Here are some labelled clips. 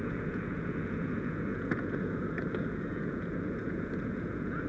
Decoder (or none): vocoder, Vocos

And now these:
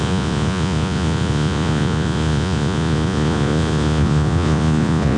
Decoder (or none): vocoder, Vocos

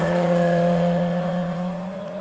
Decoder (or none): vocoder, Vocos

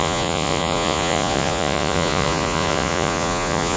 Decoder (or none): vocoder, Vocos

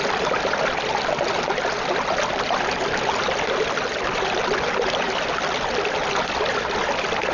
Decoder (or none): none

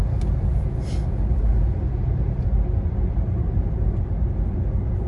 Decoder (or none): none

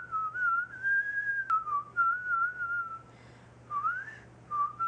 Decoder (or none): none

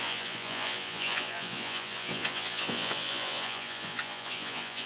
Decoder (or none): vocoder, Vocos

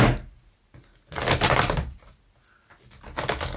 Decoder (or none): none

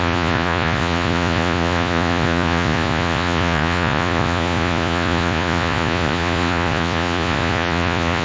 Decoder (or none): vocoder, Vocos